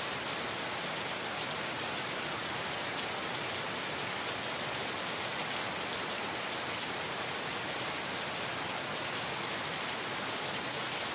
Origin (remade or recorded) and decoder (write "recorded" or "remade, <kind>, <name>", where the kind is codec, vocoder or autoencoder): recorded